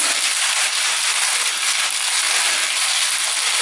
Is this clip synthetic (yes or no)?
no